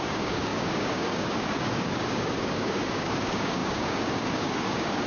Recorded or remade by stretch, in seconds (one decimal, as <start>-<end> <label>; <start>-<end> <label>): 0.0-5.1 remade